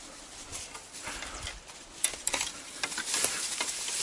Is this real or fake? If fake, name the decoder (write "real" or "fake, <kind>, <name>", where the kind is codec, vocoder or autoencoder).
real